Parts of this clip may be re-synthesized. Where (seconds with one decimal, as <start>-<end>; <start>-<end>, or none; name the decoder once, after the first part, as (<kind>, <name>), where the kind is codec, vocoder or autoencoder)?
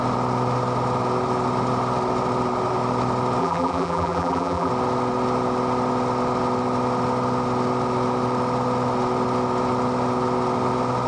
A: 3.4-4.7 (vocoder, BigVGAN v2)